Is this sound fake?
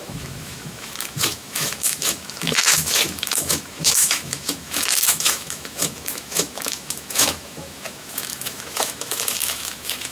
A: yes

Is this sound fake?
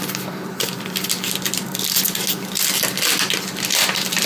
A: no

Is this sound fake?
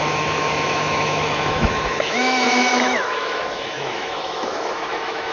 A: yes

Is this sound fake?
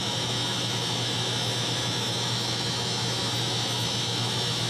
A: yes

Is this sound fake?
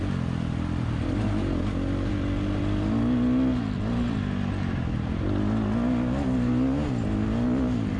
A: no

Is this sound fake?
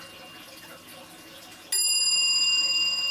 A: no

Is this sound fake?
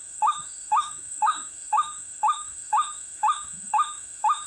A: yes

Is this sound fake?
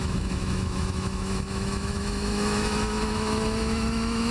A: yes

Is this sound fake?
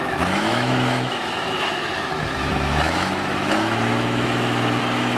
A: yes